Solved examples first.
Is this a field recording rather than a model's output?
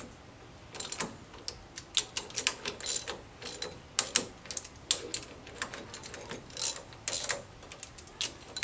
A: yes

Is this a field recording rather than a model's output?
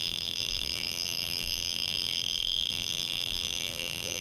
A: no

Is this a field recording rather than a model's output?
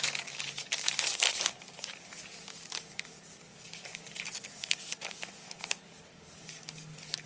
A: no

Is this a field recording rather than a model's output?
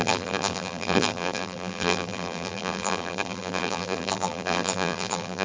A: no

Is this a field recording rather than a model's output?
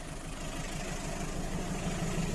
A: yes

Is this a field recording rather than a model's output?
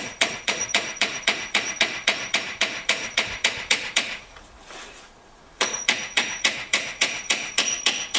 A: no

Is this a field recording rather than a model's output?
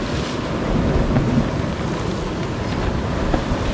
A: yes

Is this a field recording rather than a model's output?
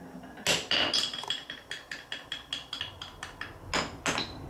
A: yes